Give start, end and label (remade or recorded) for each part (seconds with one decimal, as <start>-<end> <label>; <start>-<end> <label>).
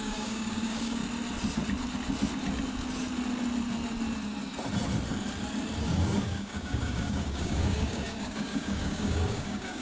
0.0-1.0 remade; 1.0-5.8 recorded; 5.8-9.8 remade